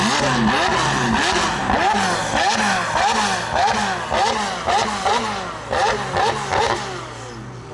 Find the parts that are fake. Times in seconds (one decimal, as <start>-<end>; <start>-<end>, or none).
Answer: none